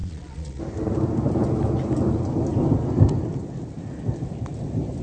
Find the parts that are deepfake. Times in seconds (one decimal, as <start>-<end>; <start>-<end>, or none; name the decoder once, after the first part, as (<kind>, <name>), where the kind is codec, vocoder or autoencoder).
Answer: 0.0-0.6 (vocoder, Vocos)